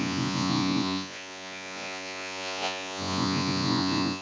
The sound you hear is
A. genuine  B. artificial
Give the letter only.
B